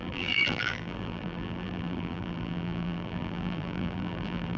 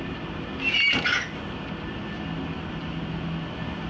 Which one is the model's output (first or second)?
first